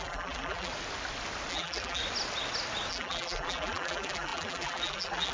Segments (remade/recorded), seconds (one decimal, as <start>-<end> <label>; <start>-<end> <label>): 0.0-0.7 remade; 0.7-1.5 recorded; 1.5-2.0 remade; 2.0-2.9 recorded; 2.9-5.3 remade